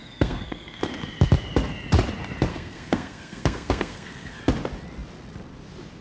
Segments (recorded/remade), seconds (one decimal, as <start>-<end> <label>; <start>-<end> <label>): 0.0-0.8 remade; 0.8-2.5 recorded; 2.5-4.4 remade; 4.4-6.0 recorded